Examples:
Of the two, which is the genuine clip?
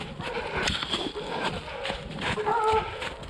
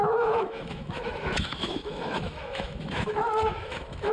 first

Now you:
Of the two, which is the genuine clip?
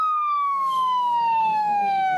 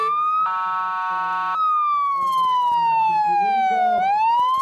second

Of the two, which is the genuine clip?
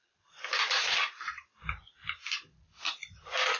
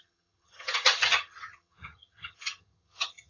first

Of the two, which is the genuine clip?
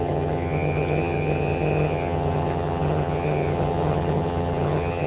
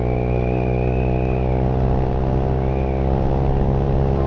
second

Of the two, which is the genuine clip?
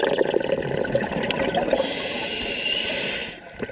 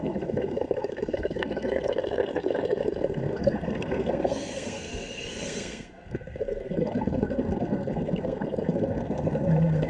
first